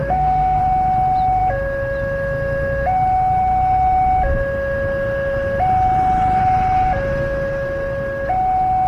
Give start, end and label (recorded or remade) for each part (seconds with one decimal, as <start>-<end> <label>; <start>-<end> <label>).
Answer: 0.0-0.6 remade; 0.6-8.9 recorded